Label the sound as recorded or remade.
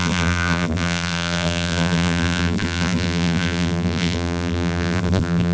remade